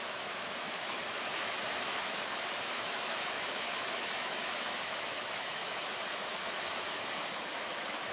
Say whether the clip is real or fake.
fake